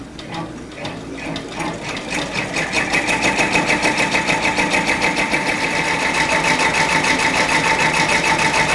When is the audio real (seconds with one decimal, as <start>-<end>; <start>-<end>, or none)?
0.0-8.7